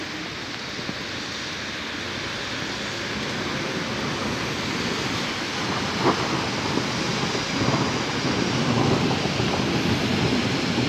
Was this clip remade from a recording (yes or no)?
no